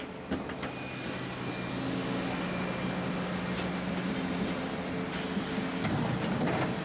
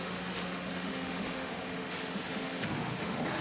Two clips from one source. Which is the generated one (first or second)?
second